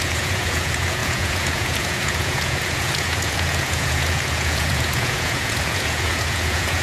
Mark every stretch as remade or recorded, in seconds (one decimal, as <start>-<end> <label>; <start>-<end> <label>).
0.0-6.8 remade

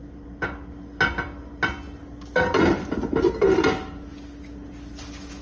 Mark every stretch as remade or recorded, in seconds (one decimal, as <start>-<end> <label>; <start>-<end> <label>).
0.0-5.4 recorded

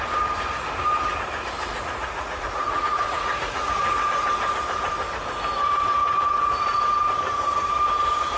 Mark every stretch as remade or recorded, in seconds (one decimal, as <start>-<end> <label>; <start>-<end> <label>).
0.0-1.7 recorded; 1.7-3.7 remade; 3.7-8.4 recorded